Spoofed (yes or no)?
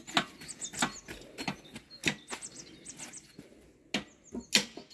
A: no